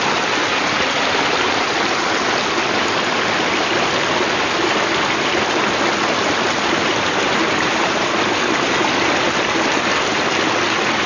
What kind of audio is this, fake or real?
real